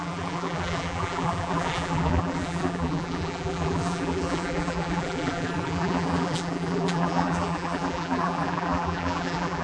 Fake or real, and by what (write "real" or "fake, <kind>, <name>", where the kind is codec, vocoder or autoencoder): fake, vocoder, BigVGAN v2